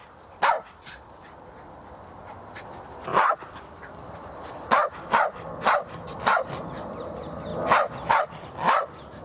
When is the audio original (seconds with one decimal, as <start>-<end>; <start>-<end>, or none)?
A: 0.0-9.2